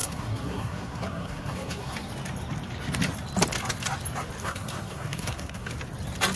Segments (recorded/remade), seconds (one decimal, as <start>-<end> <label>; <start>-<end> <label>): 0.0-2.1 remade; 2.1-4.4 recorded; 4.4-5.7 remade; 5.7-6.4 recorded